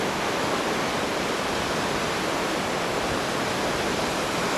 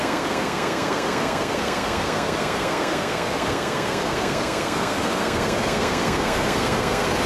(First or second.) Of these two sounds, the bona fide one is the first